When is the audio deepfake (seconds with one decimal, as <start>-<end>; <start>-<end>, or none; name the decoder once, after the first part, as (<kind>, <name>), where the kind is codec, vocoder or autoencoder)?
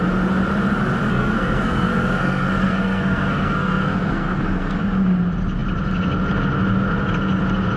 1.1-4.8 (codec, SNAC)